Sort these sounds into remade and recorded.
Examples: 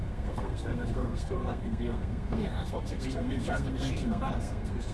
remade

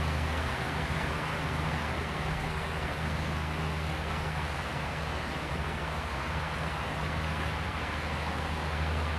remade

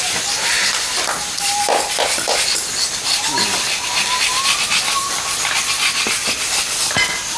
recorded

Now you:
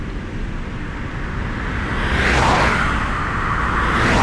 recorded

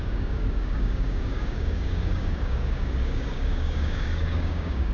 remade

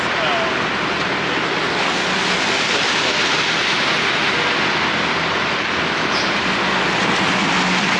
recorded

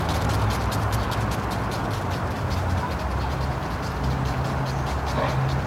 recorded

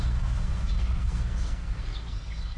remade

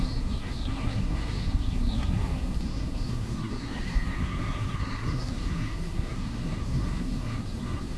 remade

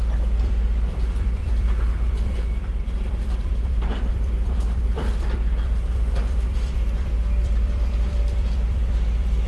remade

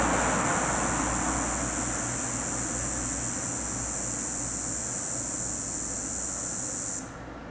recorded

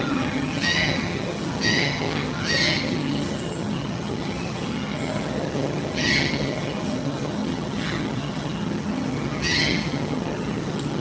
remade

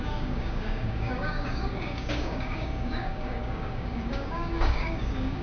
remade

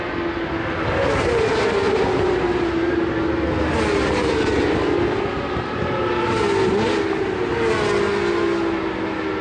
recorded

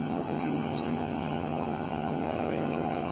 remade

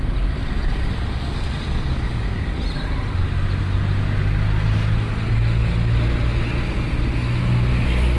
recorded